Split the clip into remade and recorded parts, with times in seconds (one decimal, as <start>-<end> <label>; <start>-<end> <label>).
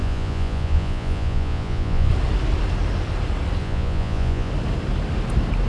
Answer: 0.0-2.1 remade; 2.1-3.6 recorded; 3.6-4.5 remade; 4.5-5.7 recorded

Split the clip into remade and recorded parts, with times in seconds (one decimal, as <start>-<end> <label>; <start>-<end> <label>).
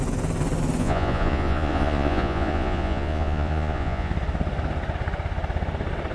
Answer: 0.0-0.8 recorded; 0.8-4.1 remade; 4.1-6.1 recorded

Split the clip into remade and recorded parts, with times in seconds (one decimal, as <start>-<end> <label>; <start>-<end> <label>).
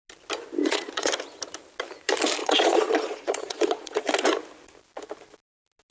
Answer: 0.0-0.6 recorded; 0.6-1.1 remade; 1.1-2.4 recorded; 2.4-4.1 remade; 4.1-5.9 recorded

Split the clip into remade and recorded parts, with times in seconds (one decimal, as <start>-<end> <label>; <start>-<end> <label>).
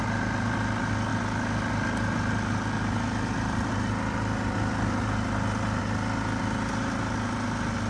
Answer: 0.0-7.9 recorded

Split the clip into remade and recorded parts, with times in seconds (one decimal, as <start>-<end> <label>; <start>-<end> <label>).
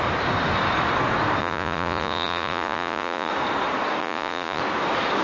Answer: 0.0-1.4 recorded; 1.4-3.3 remade; 3.3-4.0 recorded; 4.0-4.6 remade; 4.6-5.2 recorded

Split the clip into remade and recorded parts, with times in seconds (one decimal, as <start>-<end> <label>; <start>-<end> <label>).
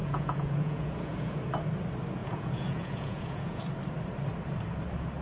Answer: 0.0-1.5 remade; 1.5-2.2 recorded; 2.2-3.6 remade; 3.6-5.2 recorded